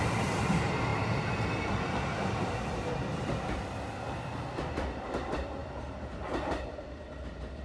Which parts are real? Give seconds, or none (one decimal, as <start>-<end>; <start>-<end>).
0.9-1.7